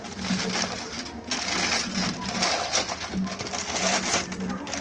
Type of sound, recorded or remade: recorded